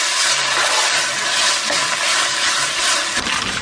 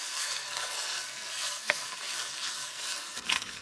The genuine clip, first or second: first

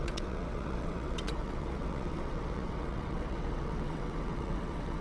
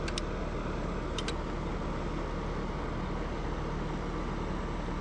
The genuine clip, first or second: second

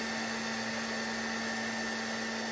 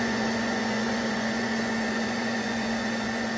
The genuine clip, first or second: first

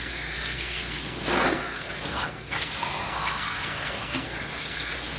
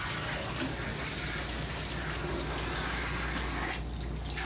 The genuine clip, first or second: second